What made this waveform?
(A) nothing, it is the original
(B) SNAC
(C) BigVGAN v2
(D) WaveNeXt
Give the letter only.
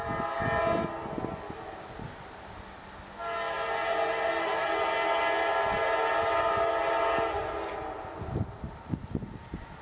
A